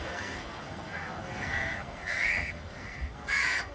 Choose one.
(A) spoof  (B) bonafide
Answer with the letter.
A